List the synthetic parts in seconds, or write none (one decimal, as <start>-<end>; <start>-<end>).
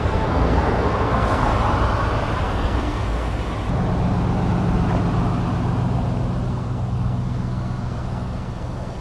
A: 0.0-1.5; 2.4-3.4; 6.5-9.0